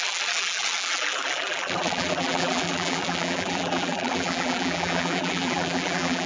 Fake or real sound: fake